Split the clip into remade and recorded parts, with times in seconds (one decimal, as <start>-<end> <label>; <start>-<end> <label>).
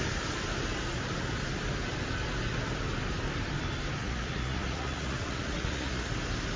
0.0-4.0 recorded; 4.0-6.1 remade; 6.1-6.6 recorded